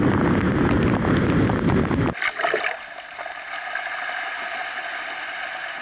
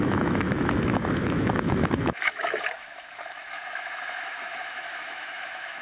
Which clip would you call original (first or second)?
first